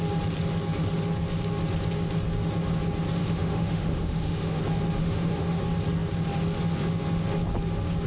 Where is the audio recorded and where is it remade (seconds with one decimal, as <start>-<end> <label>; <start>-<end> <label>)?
0.0-3.2 recorded; 3.2-4.6 remade; 4.6-5.0 recorded; 5.0-5.6 remade; 5.6-8.1 recorded